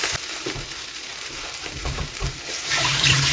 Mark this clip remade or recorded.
remade